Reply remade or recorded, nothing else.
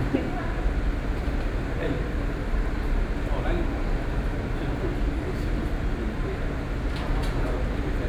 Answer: recorded